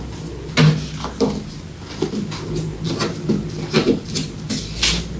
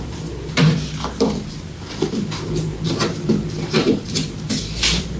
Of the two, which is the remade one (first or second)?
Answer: second